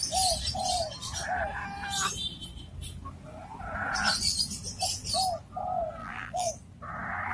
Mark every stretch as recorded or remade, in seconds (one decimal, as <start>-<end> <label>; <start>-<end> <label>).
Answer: 0.0-6.0 recorded; 6.0-6.5 remade; 6.5-7.3 recorded